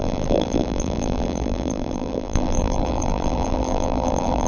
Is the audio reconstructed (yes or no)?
yes